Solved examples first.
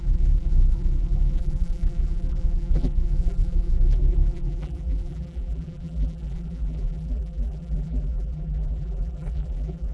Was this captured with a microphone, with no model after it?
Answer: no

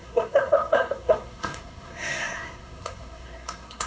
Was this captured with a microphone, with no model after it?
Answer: no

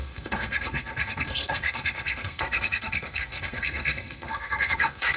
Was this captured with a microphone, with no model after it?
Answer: no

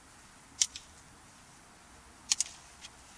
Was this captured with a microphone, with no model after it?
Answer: yes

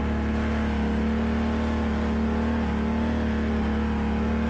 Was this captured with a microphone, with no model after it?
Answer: yes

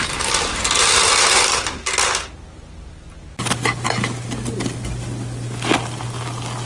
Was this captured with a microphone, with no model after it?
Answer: yes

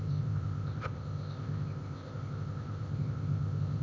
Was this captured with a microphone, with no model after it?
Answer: no